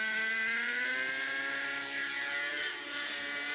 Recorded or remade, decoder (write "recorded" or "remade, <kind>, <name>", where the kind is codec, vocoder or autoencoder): recorded